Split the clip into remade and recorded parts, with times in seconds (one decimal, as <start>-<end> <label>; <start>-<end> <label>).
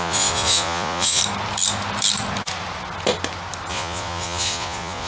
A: 0.0-1.2 remade; 1.2-3.7 recorded; 3.7-5.1 remade